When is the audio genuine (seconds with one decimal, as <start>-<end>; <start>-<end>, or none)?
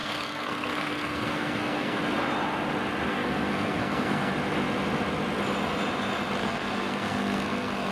2.0-3.1; 4.3-6.4